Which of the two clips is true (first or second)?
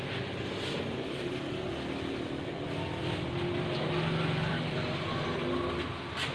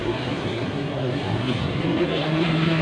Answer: first